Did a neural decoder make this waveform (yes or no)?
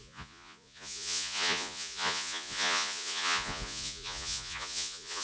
yes